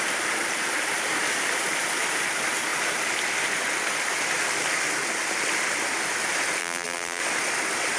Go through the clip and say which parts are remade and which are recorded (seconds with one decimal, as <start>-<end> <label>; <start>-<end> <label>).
0.0-6.6 recorded; 6.6-7.2 remade; 7.2-8.0 recorded